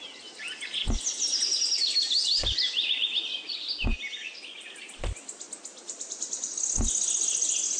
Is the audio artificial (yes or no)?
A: no